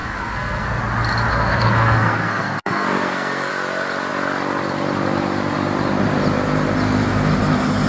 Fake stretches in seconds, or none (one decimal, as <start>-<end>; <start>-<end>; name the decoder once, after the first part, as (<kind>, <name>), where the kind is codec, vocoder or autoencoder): 0.0-0.8 (codec, SNAC); 1.3-3.5